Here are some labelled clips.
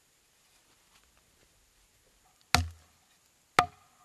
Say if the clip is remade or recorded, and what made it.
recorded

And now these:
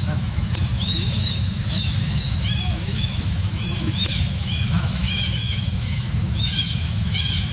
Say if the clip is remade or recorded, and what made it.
remade, autoencoder, DAC-VAE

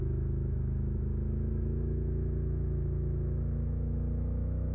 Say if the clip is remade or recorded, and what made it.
remade, autoencoder, DAC-VAE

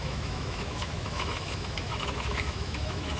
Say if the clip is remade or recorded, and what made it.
remade, autoencoder, DAC-VAE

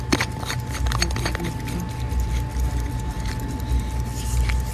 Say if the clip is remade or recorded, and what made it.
recorded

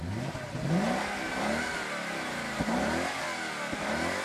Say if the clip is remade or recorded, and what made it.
recorded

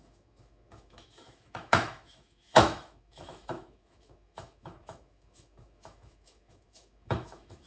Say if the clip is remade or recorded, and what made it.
remade, autoencoder, DAC-VAE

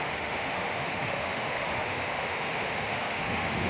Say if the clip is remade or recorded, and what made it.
remade, autoencoder, DAC-VAE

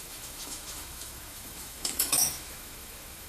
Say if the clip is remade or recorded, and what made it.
remade, autoencoder, DAC-VAE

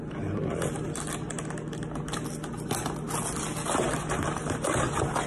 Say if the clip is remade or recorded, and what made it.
recorded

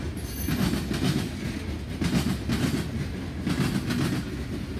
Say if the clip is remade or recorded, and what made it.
recorded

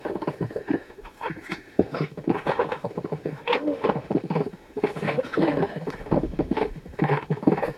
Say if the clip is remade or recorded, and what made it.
remade, autoencoder, DAC-VAE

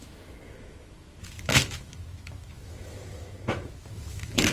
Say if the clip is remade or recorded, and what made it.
remade, autoencoder, DAC-VAE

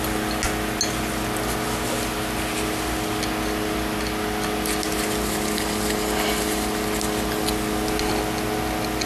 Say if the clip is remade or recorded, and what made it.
recorded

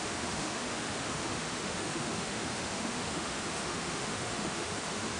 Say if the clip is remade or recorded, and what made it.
remade, autoencoder, DAC-VAE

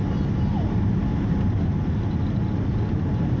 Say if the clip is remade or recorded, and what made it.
recorded